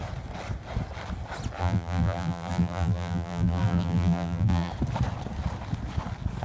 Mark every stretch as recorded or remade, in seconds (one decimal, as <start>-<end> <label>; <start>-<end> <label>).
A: 0.0-1.6 recorded; 1.6-4.7 remade; 4.7-6.4 recorded